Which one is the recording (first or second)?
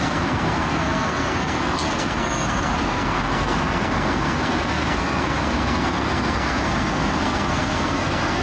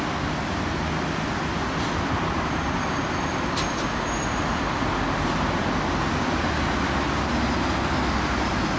second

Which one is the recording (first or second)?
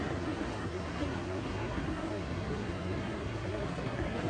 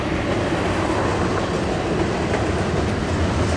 second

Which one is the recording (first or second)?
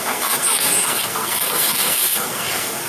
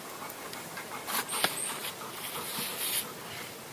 second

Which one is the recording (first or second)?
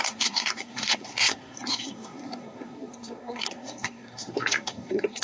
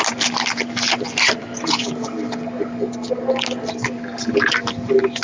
second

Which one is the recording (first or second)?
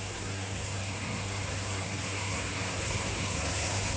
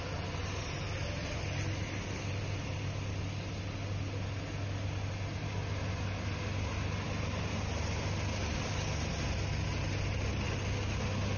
second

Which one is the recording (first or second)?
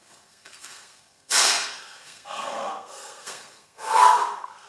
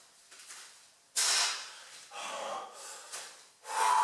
second